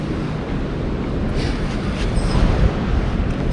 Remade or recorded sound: recorded